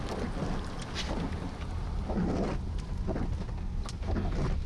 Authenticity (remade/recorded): recorded